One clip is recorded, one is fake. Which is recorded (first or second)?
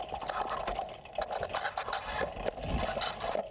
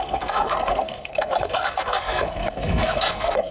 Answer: first